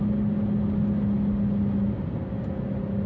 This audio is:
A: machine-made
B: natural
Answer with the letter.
B